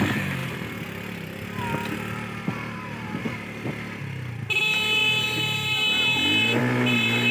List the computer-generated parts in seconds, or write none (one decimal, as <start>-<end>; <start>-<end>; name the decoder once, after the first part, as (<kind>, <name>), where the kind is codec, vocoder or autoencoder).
none